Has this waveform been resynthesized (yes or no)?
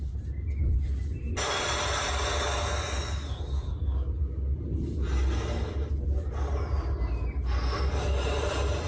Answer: no